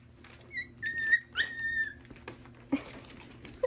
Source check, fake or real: real